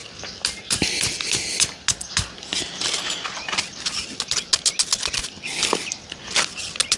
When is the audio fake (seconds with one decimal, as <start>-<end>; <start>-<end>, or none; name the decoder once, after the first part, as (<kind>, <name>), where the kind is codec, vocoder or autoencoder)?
none